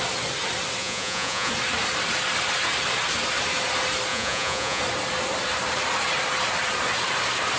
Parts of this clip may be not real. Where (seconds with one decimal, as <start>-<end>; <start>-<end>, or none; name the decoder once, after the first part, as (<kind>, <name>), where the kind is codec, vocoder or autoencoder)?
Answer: 0.8-1.5 (vocoder, Vocos); 4.1-4.8